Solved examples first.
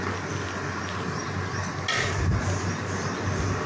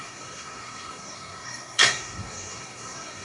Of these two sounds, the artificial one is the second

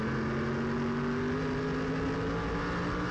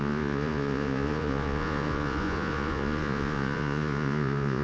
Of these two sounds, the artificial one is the second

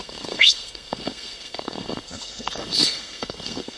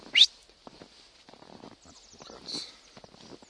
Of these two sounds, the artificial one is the first